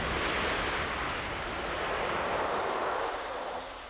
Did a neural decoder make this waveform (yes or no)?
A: no